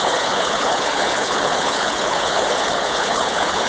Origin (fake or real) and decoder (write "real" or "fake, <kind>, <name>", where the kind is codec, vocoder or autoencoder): fake, codec, HILCodec